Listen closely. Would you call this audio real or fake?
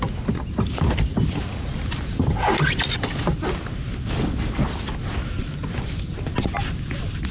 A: real